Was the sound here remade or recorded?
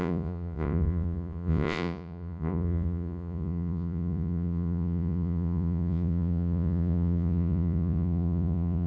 remade